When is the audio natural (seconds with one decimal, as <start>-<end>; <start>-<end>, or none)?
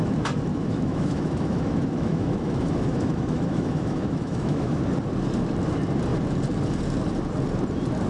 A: 0.0-0.5; 4.8-8.1